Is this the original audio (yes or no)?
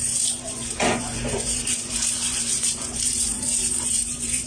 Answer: no